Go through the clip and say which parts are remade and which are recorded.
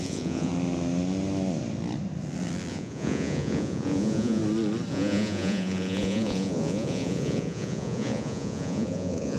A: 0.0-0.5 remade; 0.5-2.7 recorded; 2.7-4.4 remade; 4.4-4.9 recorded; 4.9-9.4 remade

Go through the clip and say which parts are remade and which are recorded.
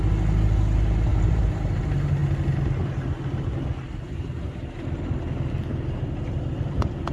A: 0.0-1.1 recorded; 1.1-1.8 remade; 1.8-7.1 recorded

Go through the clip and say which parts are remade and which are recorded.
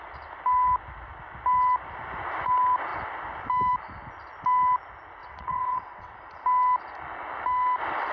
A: 0.0-5.2 recorded; 5.2-6.1 remade; 6.1-8.1 recorded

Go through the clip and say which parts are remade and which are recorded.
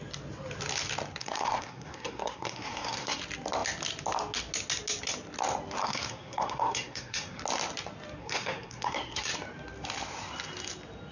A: 0.0-1.2 recorded; 1.2-3.2 remade; 3.2-5.8 recorded; 5.8-7.4 remade; 7.4-8.2 recorded; 8.2-9.3 remade; 9.3-11.1 recorded